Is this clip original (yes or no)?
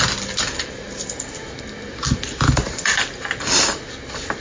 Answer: yes